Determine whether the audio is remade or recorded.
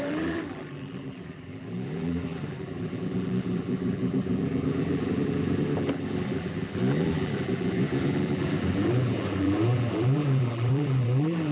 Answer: remade